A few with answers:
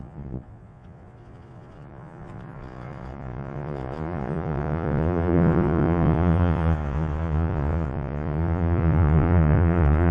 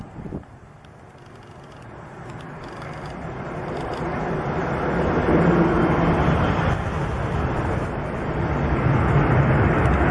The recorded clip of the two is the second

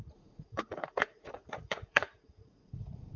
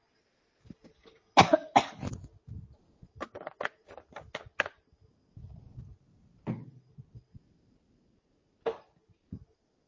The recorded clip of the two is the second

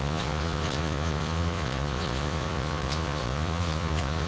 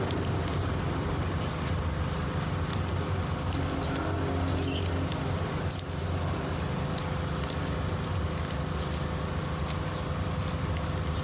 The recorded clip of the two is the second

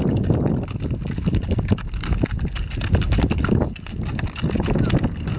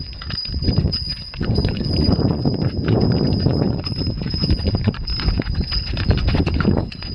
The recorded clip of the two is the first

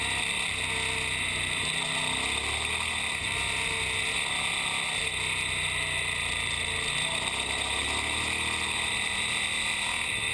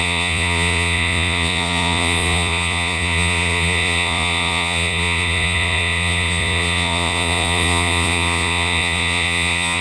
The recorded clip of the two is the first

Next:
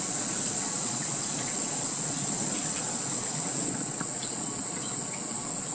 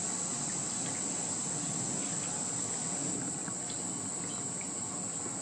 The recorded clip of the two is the second